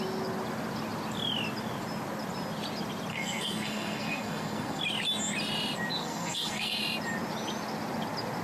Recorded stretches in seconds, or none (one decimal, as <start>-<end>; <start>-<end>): 0.0-3.1; 4.8-6.0; 6.8-8.4